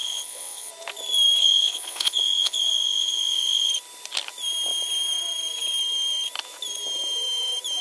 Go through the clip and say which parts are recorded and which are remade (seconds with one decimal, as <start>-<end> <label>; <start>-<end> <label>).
0.0-0.7 remade; 0.7-1.4 recorded; 1.4-3.7 remade; 3.7-7.8 recorded